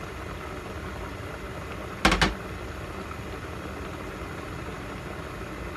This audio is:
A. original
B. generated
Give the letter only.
A